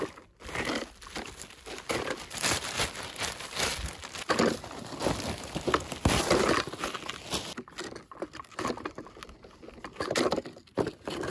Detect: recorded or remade recorded